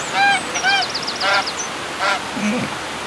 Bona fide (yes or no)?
yes